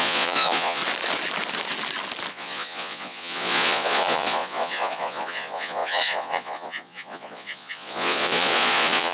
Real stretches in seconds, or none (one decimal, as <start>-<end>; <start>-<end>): 0.8-2.3